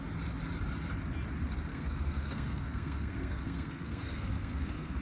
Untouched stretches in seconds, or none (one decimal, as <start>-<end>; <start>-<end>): 0.0-1.7